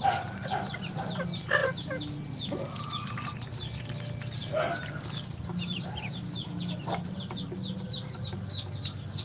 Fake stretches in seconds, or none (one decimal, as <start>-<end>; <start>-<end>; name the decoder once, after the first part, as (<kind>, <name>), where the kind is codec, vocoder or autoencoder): none